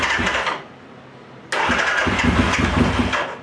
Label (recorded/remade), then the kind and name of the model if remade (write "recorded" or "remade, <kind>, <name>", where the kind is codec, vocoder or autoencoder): recorded